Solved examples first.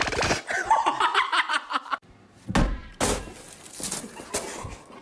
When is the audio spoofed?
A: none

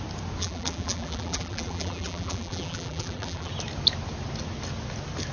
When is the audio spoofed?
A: 0.4-3.5 (vocoder, BigVGAN v2)

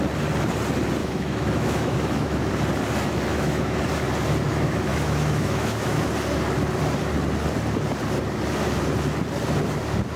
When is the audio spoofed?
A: 1.0-2.5 (autoencoder, DAC-VAE); 3.3-3.8; 4.5-6.1